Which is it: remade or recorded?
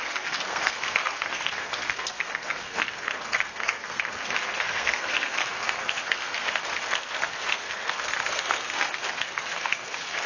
remade